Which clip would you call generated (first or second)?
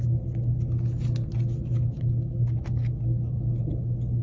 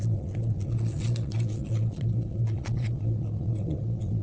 second